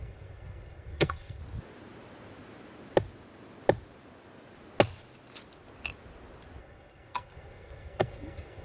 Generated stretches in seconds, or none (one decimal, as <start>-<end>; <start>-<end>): 0.0-1.4; 6.6-8.6